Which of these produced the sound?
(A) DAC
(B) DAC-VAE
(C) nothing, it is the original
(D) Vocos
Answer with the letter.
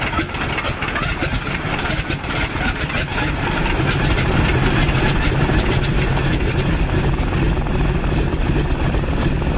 C